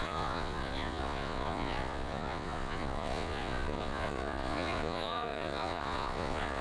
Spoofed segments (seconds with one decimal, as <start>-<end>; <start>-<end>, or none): 0.0-6.6